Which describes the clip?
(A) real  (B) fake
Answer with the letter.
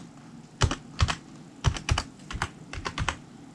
A